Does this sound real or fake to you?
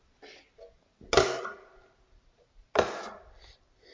real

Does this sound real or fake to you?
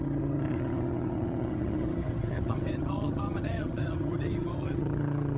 fake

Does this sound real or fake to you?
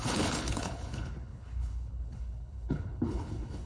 fake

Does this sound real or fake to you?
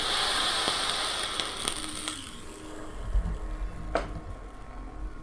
real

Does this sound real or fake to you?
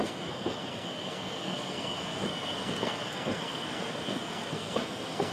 fake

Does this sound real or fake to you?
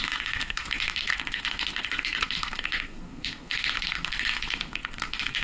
fake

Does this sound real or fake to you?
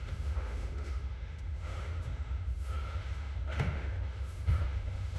fake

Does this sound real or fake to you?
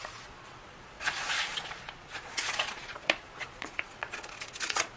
fake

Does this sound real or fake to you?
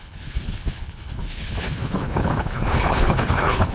fake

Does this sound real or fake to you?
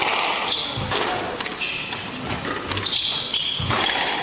real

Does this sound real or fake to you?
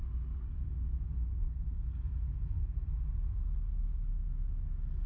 real